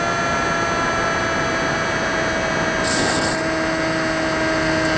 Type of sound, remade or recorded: recorded